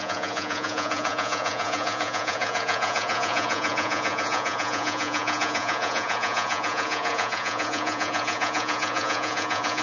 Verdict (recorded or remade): remade